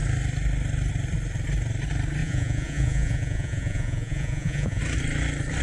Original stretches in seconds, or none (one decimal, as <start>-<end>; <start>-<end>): 0.0-2.2; 4.8-5.6